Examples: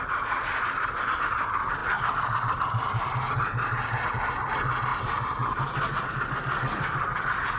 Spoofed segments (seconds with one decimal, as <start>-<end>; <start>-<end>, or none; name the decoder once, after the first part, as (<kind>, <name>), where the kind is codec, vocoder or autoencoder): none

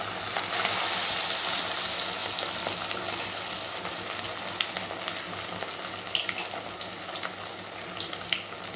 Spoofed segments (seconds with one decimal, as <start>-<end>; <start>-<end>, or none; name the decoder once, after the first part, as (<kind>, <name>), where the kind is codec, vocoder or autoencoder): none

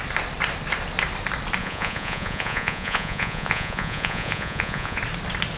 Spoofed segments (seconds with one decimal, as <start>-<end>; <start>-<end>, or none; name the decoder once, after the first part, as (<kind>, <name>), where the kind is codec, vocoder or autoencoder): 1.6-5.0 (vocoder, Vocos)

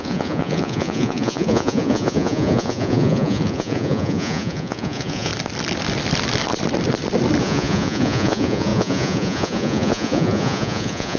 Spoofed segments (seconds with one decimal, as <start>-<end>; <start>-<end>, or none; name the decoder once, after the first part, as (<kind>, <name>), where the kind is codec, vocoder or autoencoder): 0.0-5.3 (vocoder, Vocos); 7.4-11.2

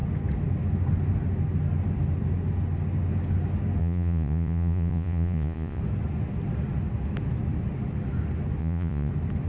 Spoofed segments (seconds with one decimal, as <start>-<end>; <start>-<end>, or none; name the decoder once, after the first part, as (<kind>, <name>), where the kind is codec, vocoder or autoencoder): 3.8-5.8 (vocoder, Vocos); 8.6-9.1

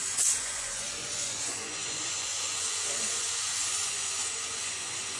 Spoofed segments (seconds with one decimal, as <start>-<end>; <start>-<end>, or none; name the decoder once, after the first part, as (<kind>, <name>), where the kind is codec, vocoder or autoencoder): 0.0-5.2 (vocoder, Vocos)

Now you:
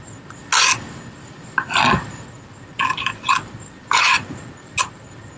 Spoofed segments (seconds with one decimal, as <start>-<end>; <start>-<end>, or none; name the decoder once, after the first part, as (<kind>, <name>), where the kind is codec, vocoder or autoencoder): none